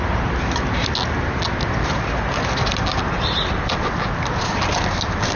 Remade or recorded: recorded